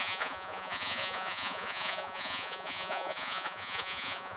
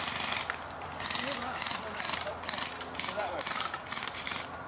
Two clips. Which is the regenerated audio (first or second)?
first